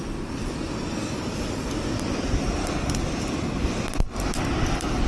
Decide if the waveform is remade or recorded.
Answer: recorded